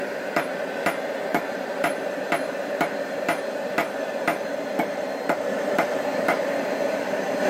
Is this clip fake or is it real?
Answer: fake